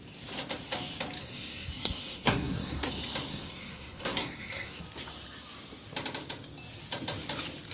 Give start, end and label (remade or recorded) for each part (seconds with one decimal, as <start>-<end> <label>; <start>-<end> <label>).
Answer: 0.0-1.2 recorded; 1.2-2.9 remade; 2.9-3.3 recorded; 3.3-4.8 remade; 4.8-7.7 recorded